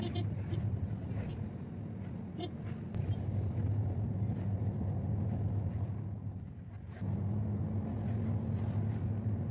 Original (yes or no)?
yes